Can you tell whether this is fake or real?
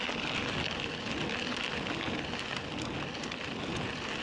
real